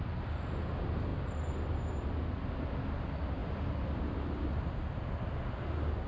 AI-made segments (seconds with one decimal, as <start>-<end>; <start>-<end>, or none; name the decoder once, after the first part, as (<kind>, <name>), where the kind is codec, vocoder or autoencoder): none

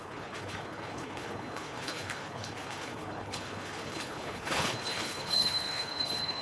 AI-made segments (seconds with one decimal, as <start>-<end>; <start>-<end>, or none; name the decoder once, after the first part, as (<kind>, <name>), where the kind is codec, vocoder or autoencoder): 0.0-6.4 (codec, HILCodec)

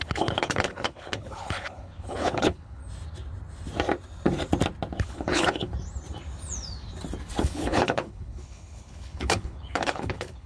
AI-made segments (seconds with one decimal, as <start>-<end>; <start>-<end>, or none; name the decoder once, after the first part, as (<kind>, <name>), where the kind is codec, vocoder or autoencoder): 0.0-2.8 (codec, HILCodec); 5.0-5.7; 7.4-10.5

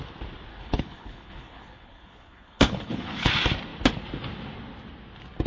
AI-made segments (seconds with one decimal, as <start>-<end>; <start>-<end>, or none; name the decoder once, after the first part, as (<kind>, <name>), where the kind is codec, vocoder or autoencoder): 0.5-3.3 (codec, HILCodec)

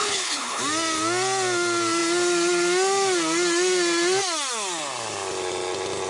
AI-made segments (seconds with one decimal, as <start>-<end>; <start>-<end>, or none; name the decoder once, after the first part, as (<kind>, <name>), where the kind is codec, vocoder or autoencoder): 0.0-0.6 (codec, HILCodec)